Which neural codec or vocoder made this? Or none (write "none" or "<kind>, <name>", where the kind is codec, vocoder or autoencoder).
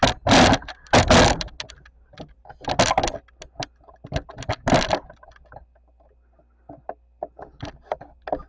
none